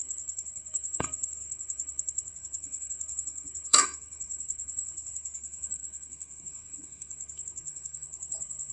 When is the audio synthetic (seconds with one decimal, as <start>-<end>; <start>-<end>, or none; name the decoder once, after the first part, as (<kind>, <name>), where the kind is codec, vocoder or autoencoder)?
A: 0.0-8.7 (codec, SNAC)